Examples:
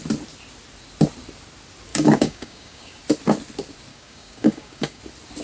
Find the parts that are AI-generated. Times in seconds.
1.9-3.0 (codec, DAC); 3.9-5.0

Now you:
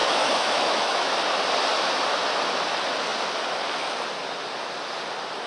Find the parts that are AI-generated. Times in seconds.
0.0-1.1 (autoencoder, DAC-VAE)

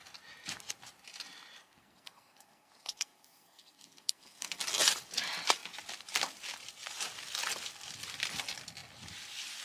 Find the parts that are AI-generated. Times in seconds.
1.6-4.6 (codec, SNAC)

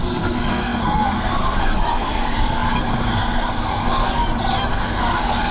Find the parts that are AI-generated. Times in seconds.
0.0-4.2 (codec, SNAC); 4.7-5.5

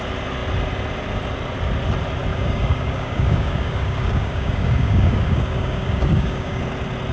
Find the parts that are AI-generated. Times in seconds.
2.3-6.6 (codec, DAC)

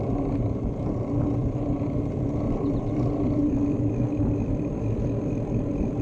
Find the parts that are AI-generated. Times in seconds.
none

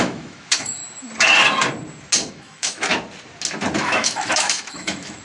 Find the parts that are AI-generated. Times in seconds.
0.0-0.8 (autoencoder, DAC-VAE); 2.3-2.9; 3.8-5.2

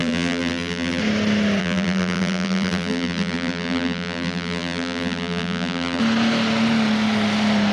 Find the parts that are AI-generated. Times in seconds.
0.0-1.0 (vocoder, BigVGAN v2); 1.6-6.0